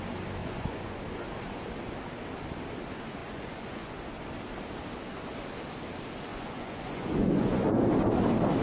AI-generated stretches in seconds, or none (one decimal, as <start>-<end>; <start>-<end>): 0.4-1.0; 3.2-3.9; 6.3-7.8